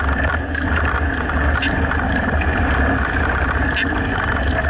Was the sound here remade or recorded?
recorded